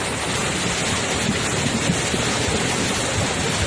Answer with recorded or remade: recorded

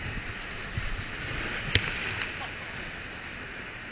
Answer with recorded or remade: recorded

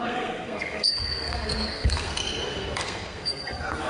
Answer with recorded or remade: remade